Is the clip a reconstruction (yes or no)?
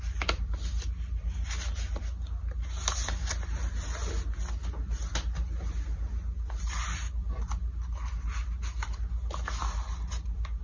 no